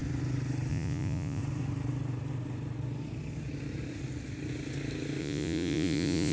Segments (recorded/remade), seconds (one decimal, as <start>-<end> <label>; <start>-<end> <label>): 0.0-0.7 recorded; 0.7-1.4 remade; 1.4-5.2 recorded; 5.2-6.3 remade